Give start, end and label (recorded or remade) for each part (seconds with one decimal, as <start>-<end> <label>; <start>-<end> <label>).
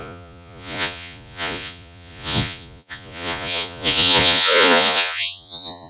0.0-5.9 remade